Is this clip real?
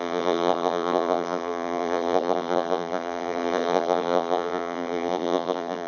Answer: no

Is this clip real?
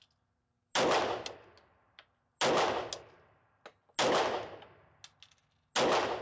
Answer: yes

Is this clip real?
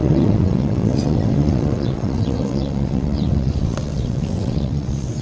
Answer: no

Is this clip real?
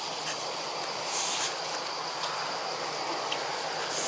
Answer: yes